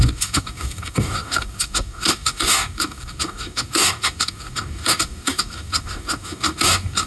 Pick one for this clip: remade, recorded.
remade